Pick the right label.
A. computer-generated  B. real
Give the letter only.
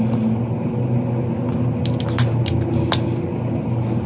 B